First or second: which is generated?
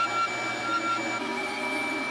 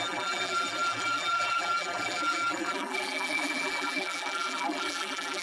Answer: second